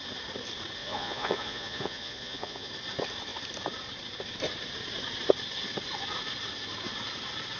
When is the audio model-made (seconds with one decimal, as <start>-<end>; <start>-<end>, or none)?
0.8-2.7